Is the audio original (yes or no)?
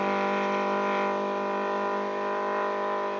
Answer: yes